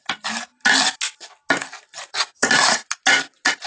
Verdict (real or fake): real